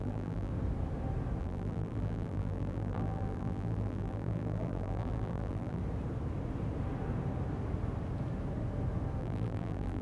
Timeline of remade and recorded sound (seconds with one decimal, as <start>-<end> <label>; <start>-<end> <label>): 0.0-0.5 remade; 0.5-1.4 recorded; 1.4-5.8 remade; 5.8-9.2 recorded; 9.2-10.0 remade